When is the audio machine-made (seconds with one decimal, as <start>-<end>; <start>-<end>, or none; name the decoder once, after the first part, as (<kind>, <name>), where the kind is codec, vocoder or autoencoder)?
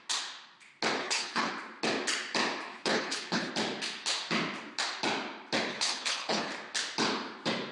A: 1.0-1.5 (codec, HILCodec); 2.7-3.5; 5.7-6.5